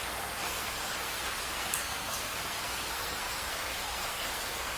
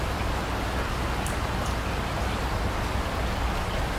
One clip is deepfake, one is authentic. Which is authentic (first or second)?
second